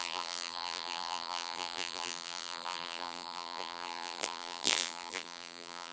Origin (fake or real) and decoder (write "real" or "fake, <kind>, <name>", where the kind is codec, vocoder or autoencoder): fake, vocoder, BigVGAN v2